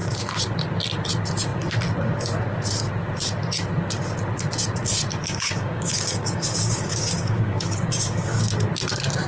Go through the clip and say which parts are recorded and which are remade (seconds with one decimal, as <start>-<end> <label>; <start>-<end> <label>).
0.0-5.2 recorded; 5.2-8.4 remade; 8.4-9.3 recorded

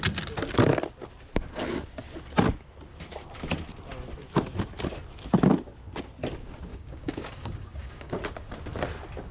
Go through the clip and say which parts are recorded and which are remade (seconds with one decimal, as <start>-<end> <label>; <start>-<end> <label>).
0.0-6.7 recorded; 6.7-8.1 remade; 8.1-9.3 recorded

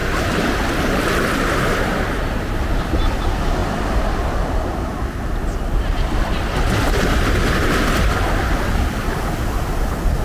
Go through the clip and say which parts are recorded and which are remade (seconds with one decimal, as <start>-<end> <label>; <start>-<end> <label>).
0.0-10.2 recorded

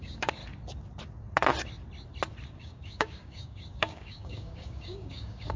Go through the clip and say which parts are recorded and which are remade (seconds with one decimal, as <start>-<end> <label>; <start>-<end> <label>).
0.0-0.4 remade; 0.4-2.6 recorded; 2.6-5.6 remade